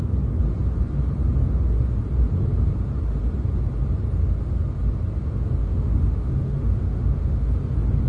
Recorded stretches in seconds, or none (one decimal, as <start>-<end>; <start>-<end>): 0.0-5.6; 7.6-8.1